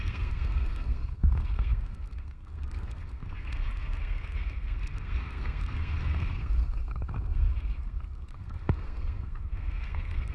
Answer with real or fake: fake